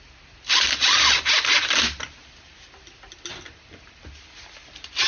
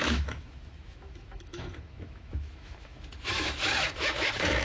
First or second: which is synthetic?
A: second